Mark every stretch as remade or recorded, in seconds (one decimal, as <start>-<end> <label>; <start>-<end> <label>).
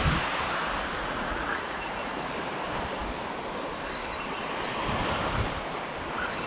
0.0-1.0 recorded; 1.0-2.1 remade; 2.1-6.5 recorded